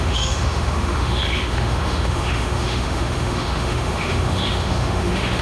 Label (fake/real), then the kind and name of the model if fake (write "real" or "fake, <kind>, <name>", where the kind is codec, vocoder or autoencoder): fake, autoencoder, DAC-VAE